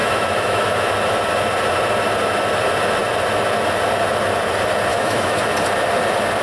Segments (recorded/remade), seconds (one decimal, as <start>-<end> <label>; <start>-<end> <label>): 0.0-0.9 remade; 0.9-4.9 recorded; 4.9-5.4 remade; 5.4-6.4 recorded